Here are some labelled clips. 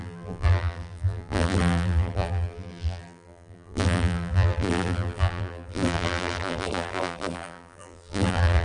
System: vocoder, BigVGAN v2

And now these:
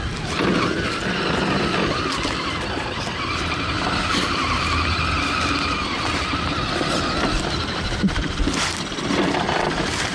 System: none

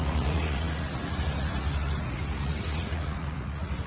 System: vocoder, Vocos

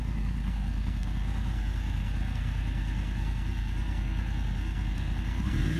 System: codec, SNAC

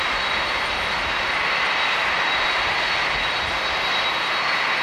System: none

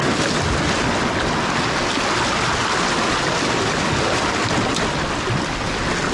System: none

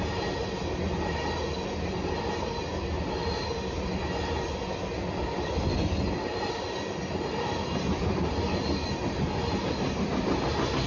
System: none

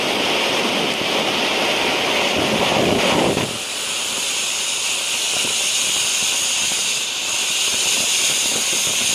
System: none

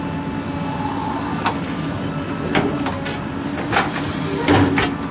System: none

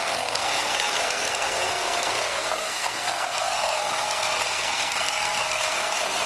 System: codec, SNAC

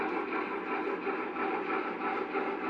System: none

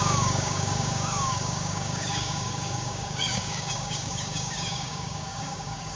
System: codec, DAC